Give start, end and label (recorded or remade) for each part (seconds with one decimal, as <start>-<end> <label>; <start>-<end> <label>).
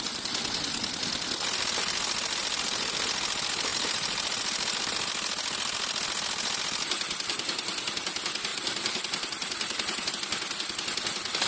0.0-3.7 recorded; 3.7-4.9 remade; 4.9-8.5 recorded; 8.5-10.1 remade; 10.1-11.5 recorded